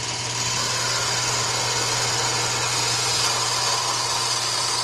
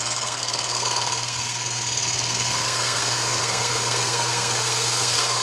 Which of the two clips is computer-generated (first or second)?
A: second